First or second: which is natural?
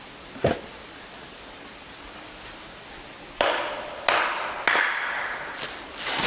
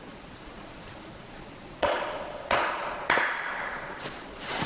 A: first